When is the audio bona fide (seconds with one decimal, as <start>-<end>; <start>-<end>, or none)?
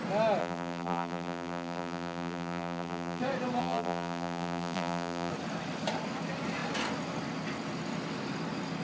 0.0-0.4; 3.2-3.6; 5.3-8.8